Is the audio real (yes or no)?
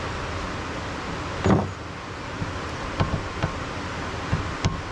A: yes